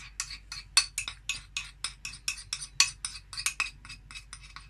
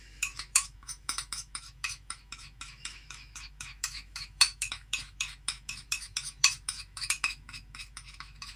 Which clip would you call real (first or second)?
first